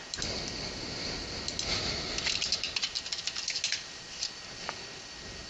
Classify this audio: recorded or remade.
recorded